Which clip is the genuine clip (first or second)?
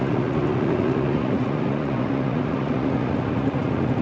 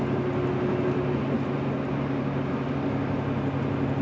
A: second